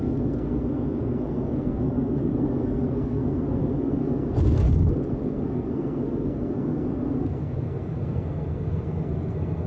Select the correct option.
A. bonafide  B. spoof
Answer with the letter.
B